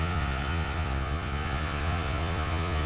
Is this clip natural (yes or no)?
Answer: no